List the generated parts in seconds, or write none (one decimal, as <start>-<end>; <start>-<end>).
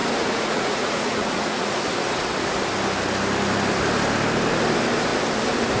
0.0-1.8